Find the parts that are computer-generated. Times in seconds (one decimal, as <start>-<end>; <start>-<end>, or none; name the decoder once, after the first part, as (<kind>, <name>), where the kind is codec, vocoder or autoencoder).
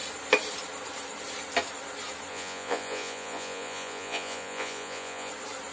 2.3-5.3 (vocoder, Vocos)